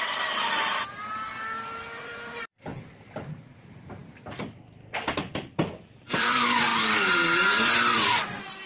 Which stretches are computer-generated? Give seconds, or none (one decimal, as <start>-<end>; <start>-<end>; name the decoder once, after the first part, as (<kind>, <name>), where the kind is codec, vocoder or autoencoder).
0.0-1.3 (vocoder, BigVGAN v2); 1.8-4.0; 5.6-8.7

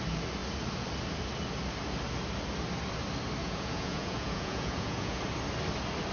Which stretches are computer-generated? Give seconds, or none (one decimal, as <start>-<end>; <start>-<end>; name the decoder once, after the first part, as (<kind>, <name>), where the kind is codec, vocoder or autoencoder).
3.4-5.2 (vocoder, Vocos)

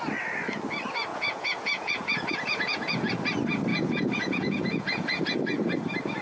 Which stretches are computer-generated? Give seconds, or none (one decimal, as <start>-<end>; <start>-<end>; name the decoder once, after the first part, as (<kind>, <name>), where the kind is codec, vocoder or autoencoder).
1.1-3.1 (vocoder, Vocos); 3.7-5.2

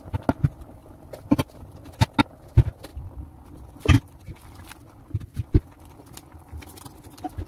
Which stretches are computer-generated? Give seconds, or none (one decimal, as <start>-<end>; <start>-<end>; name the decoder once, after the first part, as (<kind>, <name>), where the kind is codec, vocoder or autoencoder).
none

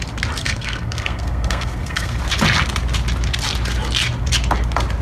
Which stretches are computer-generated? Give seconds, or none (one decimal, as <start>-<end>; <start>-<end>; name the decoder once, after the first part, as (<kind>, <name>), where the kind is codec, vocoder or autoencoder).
0.4-2.2 (codec, SNAC)

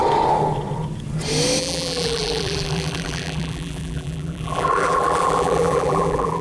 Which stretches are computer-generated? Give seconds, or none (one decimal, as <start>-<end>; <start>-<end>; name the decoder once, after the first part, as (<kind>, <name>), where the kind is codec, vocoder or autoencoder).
1.6-6.4 (vocoder, BigVGAN v2)

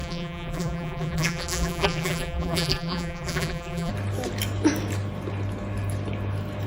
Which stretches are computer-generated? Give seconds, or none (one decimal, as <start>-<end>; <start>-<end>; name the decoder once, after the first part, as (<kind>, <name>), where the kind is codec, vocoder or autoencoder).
0.0-3.9 (vocoder, BigVGAN v2)